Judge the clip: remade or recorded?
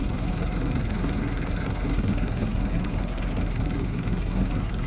remade